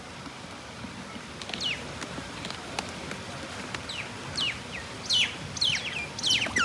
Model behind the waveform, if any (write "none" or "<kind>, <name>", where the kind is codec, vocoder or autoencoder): none